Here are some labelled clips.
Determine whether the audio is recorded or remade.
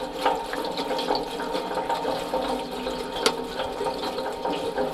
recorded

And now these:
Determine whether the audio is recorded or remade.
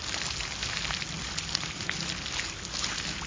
recorded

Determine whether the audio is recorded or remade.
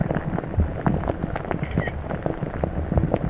recorded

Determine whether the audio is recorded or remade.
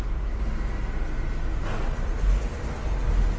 recorded